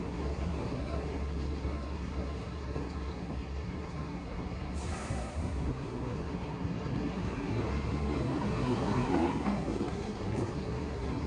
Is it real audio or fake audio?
fake